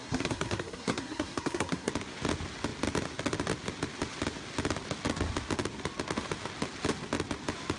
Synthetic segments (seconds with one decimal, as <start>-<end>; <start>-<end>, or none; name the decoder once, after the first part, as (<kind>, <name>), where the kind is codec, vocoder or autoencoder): 0.0-1.9 (codec, SNAC)